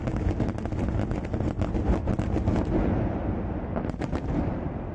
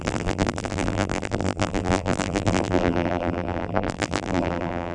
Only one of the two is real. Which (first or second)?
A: first